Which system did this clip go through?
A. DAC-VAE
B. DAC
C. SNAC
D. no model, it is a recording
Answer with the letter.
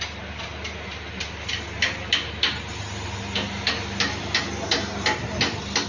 D